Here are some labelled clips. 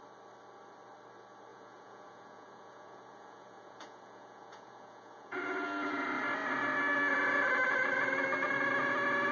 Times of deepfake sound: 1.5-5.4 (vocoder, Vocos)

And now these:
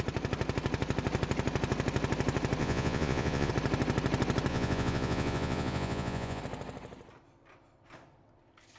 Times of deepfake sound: 2.6-3.5 (vocoder, Vocos); 4.5-6.4

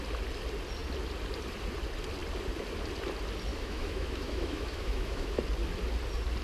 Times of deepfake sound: 3.5-5.4 (autoencoder, DAC-VAE)

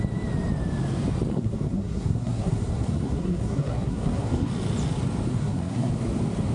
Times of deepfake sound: 1.3-4.5 (codec, SNAC); 5.3-5.9